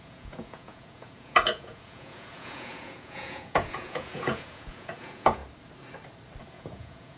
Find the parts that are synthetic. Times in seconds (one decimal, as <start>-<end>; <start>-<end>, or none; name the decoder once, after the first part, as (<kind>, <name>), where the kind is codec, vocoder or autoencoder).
0.0-5.4 (vocoder, Vocos); 6.4-7.2